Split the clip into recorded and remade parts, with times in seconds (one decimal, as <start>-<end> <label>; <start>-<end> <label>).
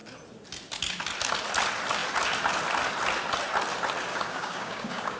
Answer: 0.0-4.1 recorded; 4.1-5.2 remade